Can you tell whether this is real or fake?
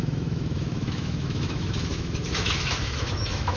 fake